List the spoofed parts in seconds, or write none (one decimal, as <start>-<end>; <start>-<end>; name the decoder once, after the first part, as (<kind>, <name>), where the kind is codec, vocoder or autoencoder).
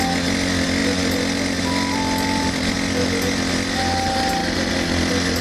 none